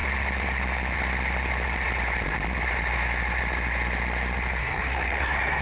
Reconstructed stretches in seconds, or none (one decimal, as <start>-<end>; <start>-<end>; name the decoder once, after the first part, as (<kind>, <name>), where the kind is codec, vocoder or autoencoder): 4.6-5.6 (codec, SNAC)